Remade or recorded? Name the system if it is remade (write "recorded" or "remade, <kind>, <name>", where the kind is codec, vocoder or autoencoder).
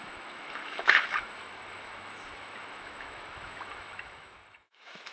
remade, autoencoder, DAC-VAE